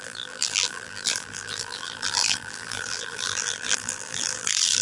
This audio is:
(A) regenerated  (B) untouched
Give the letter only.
A